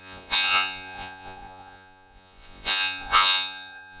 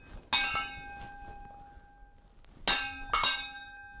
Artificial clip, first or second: first